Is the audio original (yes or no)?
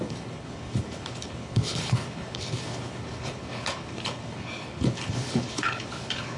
no